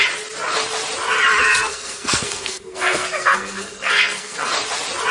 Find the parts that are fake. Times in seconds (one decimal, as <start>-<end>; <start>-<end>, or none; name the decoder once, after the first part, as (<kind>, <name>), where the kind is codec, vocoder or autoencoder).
1.4-4.5 (codec, SNAC)